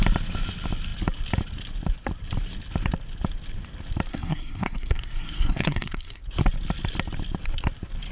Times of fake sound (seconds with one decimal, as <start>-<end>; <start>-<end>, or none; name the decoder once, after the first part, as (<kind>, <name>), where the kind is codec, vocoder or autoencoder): 4.1-6.2 (codec, SNAC)